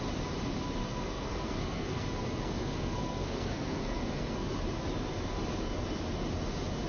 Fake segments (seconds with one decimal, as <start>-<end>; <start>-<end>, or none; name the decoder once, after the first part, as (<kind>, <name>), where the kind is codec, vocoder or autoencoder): 0.8-4.6 (codec, SNAC)